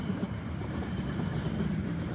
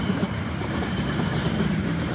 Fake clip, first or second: first